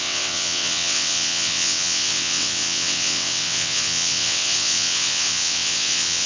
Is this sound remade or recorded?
remade